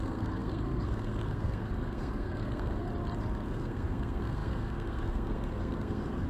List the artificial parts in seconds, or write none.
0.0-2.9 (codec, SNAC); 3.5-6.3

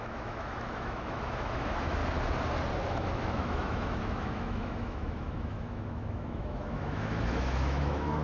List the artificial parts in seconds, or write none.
0.0-2.0 (autoencoder, DAC-VAE); 2.8-8.2

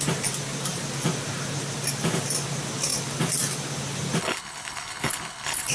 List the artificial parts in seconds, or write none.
4.2-5.7 (codec, HILCodec)

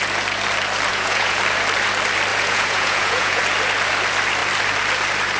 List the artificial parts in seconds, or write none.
0.9-1.4 (vocoder, Vocos); 2.3-3.4

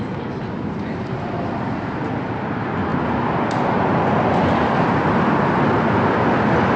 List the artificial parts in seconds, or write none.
none